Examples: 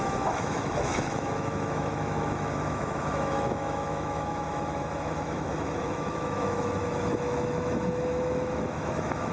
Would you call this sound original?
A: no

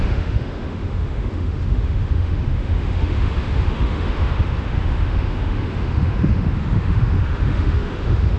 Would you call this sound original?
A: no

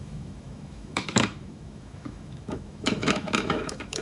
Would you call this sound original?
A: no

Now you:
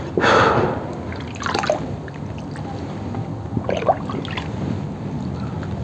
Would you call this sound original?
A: yes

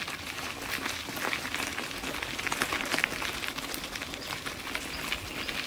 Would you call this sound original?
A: yes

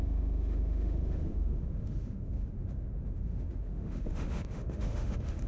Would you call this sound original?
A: no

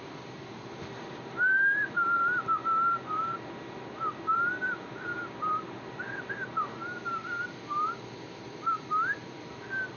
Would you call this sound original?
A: yes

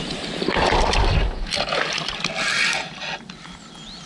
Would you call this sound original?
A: yes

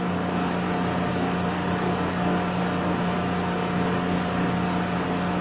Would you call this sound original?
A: yes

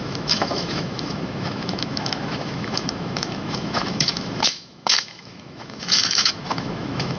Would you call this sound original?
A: no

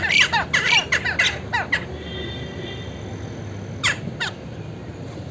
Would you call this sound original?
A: yes